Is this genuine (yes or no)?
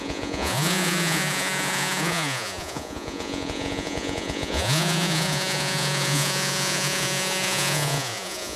no